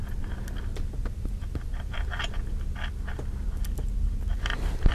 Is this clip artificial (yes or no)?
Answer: no